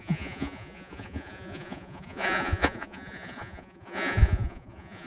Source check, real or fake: fake